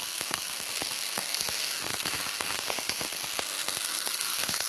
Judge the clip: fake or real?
fake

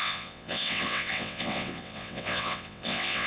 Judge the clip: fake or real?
fake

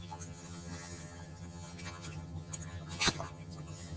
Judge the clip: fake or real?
fake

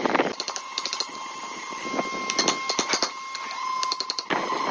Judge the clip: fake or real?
real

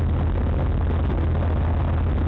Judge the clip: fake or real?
real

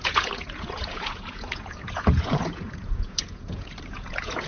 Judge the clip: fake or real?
fake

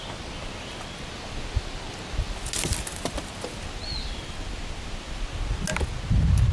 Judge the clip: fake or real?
real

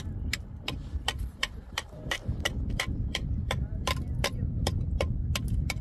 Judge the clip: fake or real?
fake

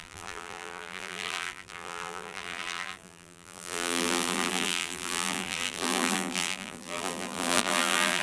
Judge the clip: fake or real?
fake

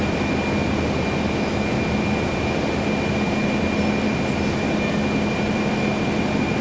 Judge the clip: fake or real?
real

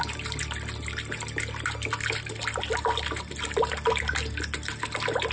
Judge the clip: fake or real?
real